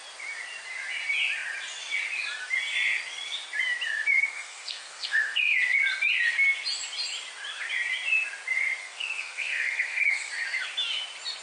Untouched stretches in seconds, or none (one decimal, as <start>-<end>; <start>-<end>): 0.0-4.2; 5.4-8.8; 10.3-11.4